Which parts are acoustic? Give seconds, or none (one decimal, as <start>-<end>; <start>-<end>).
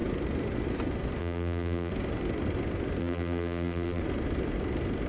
0.0-1.2; 1.9-3.0; 4.0-5.1